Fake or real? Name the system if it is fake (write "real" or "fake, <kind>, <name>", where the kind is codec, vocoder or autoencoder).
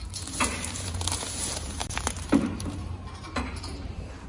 fake, vocoder, BigVGAN v2